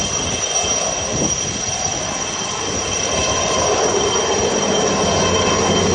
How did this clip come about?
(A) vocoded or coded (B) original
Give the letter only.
B